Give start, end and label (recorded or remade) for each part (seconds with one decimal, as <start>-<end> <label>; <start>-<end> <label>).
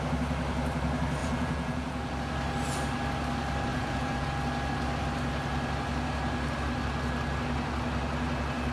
0.0-1.2 recorded; 1.2-2.1 remade; 2.1-3.7 recorded; 3.7-4.3 remade; 4.3-8.7 recorded